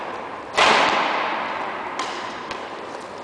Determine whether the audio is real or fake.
real